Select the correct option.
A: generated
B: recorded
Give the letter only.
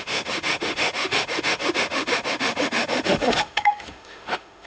A